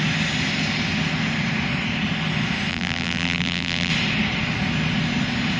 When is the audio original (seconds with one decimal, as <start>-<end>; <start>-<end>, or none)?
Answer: 0.0-2.7; 3.9-5.6